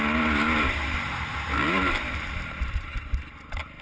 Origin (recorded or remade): recorded